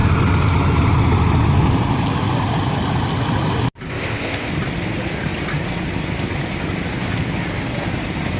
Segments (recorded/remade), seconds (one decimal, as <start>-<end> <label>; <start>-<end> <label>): 0.0-3.9 recorded; 3.9-4.5 remade; 4.5-8.4 recorded

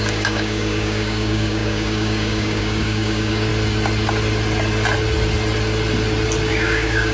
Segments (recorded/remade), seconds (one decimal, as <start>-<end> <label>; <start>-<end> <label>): 0.0-3.5 remade; 3.5-6.5 recorded; 6.5-7.1 remade

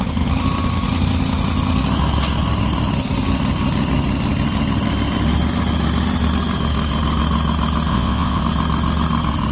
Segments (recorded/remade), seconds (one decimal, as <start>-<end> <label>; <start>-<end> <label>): 0.0-7.9 recorded; 7.9-8.4 remade; 8.4-9.5 recorded

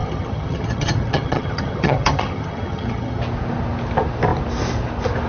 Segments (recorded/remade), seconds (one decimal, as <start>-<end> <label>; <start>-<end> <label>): 0.0-3.2 remade; 3.2-5.3 recorded

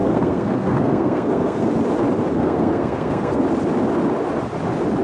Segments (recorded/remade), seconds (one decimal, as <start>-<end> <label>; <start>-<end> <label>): 0.0-1.7 remade; 1.7-2.3 recorded; 2.3-3.4 remade; 3.4-5.0 recorded

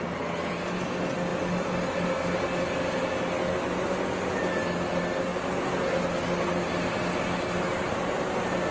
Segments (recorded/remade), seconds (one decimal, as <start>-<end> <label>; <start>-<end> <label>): 0.0-8.7 recorded

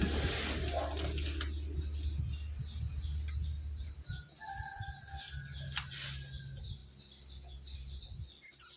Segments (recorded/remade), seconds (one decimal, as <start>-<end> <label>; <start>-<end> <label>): 0.0-8.8 recorded

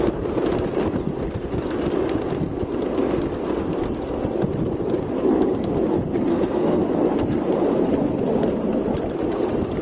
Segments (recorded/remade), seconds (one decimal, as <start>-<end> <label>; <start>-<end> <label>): 0.0-6.3 recorded; 6.3-6.9 remade; 6.9-9.8 recorded